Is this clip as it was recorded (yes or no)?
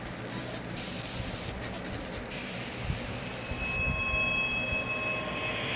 yes